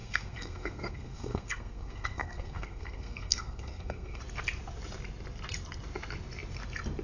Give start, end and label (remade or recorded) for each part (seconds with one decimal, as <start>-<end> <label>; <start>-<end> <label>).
0.0-4.2 remade; 4.2-7.0 recorded